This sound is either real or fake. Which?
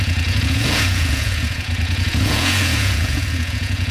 fake